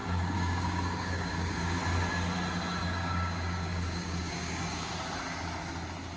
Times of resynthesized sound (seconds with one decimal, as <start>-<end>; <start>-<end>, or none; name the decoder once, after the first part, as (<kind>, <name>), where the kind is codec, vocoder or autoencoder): 0.0-1.8 (codec, DAC); 2.8-4.9